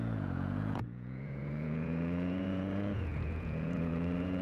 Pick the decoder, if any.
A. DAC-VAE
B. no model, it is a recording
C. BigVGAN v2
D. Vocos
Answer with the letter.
D